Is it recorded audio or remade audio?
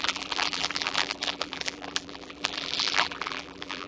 remade